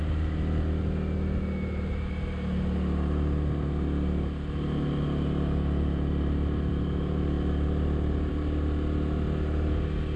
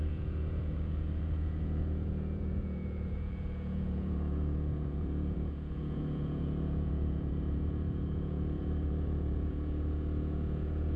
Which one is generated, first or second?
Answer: second